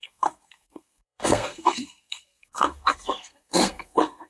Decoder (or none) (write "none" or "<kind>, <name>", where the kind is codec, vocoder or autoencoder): codec, SNAC